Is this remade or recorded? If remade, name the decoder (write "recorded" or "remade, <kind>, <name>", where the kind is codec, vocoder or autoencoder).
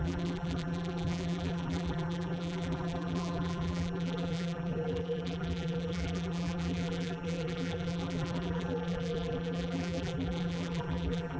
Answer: remade, vocoder, BigVGAN v2